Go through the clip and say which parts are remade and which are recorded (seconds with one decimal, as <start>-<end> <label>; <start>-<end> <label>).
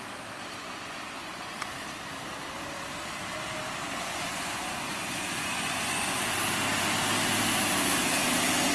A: 0.0-0.6 recorded; 0.6-1.7 remade; 1.7-3.8 recorded; 3.8-6.3 remade; 6.3-8.7 recorded